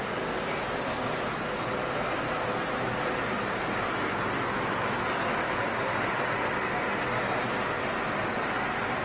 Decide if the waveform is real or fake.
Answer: real